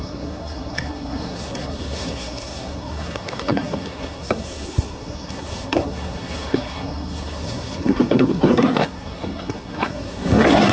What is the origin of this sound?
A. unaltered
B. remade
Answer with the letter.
B